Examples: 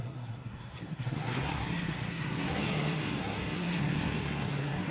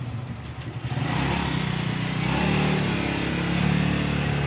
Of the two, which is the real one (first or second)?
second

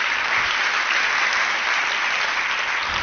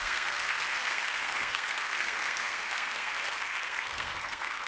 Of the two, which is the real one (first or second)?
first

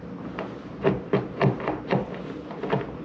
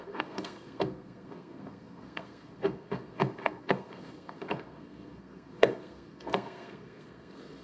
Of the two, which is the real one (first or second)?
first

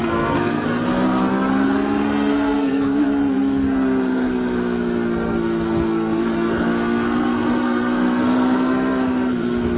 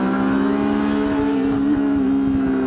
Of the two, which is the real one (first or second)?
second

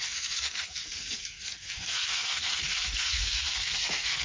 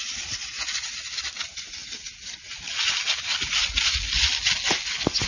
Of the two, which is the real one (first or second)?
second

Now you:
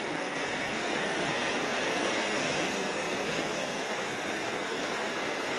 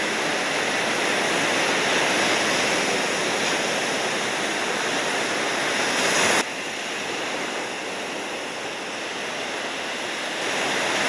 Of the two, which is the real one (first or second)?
second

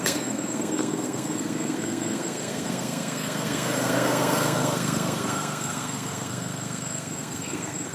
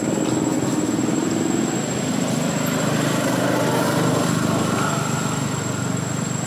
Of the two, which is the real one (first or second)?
second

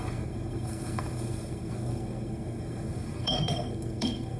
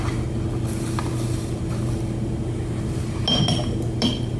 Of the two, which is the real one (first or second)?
second